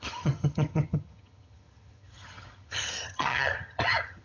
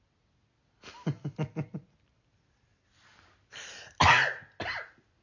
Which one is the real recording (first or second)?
second